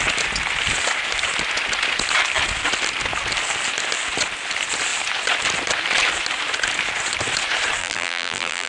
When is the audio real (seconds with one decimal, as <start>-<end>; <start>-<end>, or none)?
0.0-7.8